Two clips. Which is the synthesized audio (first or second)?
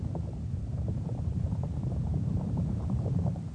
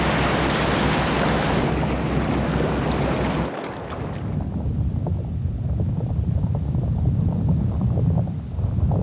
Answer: first